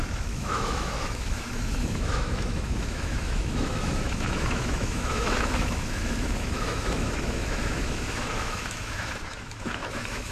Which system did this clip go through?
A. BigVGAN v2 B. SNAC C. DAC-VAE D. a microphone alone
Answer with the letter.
C